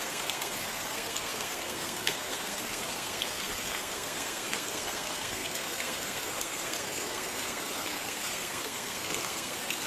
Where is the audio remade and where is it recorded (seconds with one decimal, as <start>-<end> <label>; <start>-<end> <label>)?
0.0-9.9 remade